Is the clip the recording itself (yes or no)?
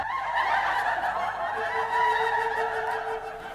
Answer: yes